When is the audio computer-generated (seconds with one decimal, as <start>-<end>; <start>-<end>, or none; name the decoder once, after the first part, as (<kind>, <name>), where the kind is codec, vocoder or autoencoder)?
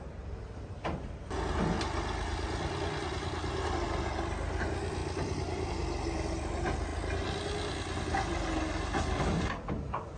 none